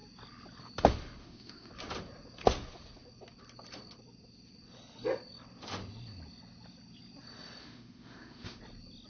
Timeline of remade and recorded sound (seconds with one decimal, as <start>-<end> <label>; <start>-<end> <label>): 0.0-1.2 recorded; 1.2-1.7 remade; 1.7-7.6 recorded; 7.6-8.6 remade; 8.6-9.1 recorded